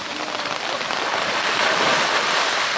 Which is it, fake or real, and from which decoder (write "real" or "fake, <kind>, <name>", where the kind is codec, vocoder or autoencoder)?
real